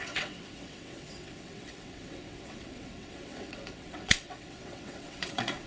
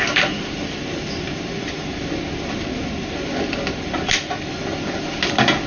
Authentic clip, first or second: second